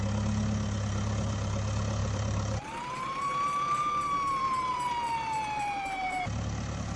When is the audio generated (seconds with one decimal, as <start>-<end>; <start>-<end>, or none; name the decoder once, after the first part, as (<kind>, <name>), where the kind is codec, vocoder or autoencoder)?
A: 2.0-6.2 (vocoder, BigVGAN v2)

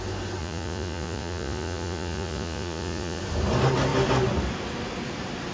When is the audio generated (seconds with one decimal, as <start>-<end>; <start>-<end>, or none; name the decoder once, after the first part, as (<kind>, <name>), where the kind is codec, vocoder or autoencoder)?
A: 0.4-3.2 (vocoder, Vocos)